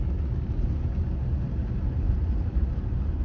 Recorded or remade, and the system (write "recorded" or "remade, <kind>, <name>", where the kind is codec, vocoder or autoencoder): recorded